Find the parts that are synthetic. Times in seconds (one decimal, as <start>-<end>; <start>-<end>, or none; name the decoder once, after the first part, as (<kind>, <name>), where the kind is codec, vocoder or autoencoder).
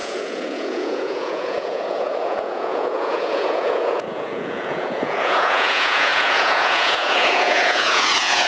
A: 0.0-8.5 (vocoder, Vocos)